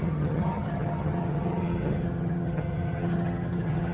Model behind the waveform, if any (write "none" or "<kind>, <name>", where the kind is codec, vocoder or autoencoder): vocoder, HiFi-GAN